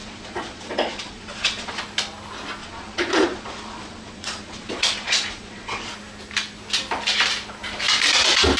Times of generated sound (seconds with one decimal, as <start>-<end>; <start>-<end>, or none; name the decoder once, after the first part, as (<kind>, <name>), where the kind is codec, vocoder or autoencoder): 0.0-1.8 (vocoder, Vocos); 2.6-5.9